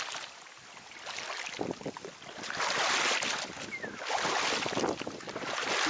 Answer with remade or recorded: recorded